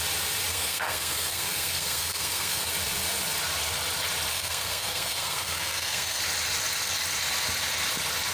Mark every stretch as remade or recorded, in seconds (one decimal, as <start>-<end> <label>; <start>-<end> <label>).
0.0-0.5 recorded; 0.5-2.7 remade; 2.7-4.3 recorded; 4.3-6.2 remade; 6.2-8.3 recorded